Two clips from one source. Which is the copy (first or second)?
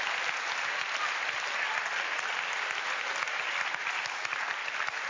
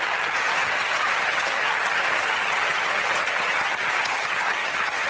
second